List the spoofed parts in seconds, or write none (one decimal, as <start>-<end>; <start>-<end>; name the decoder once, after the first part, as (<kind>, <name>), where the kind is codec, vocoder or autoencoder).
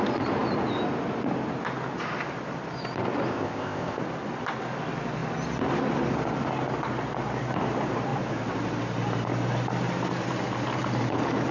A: 3.3-4.0 (codec, ZipCodec)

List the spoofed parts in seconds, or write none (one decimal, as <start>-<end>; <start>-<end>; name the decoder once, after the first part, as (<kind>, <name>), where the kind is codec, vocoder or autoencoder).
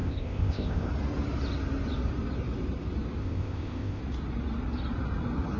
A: 0.0-0.9 (codec, ZipCodec); 3.2-4.0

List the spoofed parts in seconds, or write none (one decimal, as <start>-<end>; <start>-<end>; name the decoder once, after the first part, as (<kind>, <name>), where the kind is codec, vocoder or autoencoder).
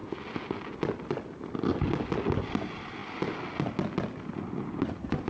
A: none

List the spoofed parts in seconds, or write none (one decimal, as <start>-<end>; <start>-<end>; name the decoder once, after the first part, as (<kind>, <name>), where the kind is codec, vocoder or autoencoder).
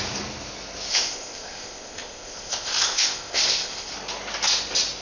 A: 0.9-3.9 (codec, ZipCodec)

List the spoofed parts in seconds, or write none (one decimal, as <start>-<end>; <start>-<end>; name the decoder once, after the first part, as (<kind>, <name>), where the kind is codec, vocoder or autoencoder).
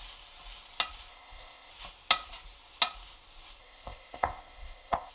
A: 1.1-1.7 (codec, ZipCodec); 3.6-5.1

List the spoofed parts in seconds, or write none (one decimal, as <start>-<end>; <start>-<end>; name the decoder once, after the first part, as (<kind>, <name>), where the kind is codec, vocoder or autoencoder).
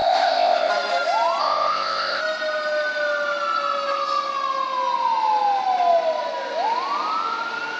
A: 0.0-0.7 (codec, ZipCodec); 1.4-2.2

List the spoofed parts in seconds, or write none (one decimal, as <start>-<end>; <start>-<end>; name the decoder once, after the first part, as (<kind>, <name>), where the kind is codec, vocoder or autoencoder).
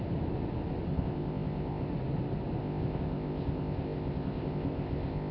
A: 0.9-1.9 (codec, ZipCodec); 2.6-5.3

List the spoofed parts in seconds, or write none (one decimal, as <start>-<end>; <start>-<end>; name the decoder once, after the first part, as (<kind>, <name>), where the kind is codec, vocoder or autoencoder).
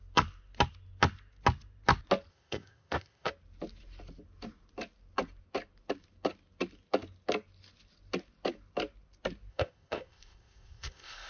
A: 2.3-3.3 (codec, ZipCodec); 9.5-11.3